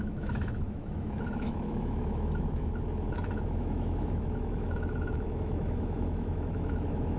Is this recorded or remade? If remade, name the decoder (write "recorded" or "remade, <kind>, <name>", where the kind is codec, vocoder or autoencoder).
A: remade, autoencoder, DAC-VAE